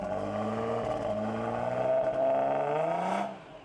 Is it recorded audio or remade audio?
recorded